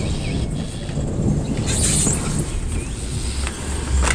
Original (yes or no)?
yes